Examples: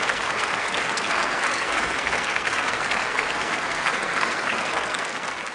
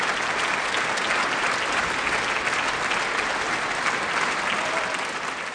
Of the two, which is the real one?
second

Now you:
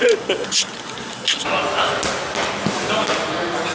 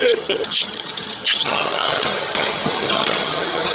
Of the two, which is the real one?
first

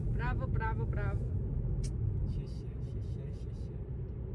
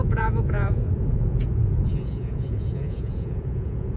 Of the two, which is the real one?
first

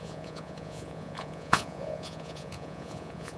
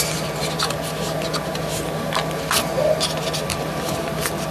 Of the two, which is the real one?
second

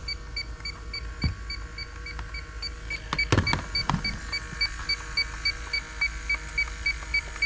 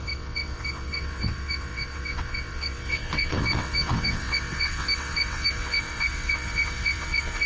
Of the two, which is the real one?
first